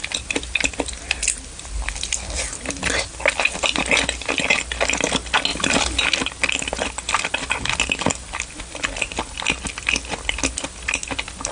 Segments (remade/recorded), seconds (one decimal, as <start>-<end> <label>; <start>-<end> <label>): 0.0-11.5 recorded